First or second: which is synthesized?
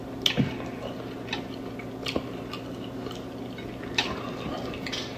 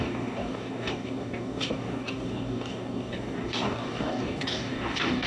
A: second